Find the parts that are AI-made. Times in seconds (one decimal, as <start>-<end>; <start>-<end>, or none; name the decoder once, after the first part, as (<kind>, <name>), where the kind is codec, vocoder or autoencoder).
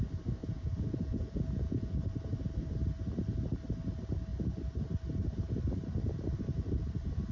0.4-2.1 (vocoder, Vocos)